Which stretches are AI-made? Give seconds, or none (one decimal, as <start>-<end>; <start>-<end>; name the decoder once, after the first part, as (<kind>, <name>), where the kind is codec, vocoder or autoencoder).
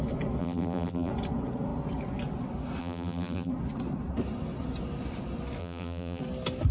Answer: 0.4-1.1 (vocoder, BigVGAN v2); 2.8-3.5; 5.6-6.2